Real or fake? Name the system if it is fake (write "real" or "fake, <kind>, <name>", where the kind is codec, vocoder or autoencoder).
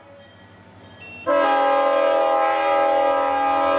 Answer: real